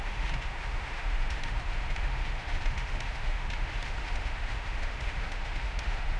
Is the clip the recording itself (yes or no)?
no